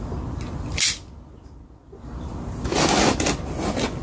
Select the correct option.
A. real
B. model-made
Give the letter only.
A